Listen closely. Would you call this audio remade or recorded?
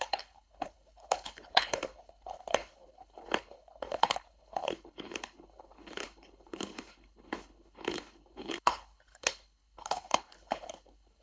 remade